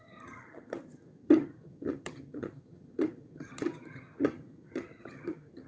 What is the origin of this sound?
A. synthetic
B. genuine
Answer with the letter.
A